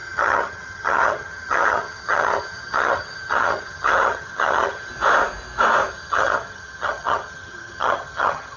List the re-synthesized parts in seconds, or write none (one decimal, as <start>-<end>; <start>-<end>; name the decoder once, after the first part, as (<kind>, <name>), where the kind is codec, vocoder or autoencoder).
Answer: 0.0-4.9 (vocoder, HiFi-GAN); 5.9-8.6